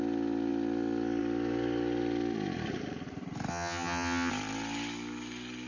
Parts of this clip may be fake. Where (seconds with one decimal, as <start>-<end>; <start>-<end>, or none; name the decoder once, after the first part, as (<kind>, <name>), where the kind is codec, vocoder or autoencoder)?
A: 3.5-4.3 (vocoder, HiFi-GAN)